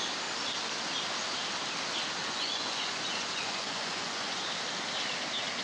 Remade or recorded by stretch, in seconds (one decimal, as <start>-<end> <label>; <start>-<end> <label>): 0.0-2.2 recorded; 2.2-4.4 remade; 4.4-5.6 recorded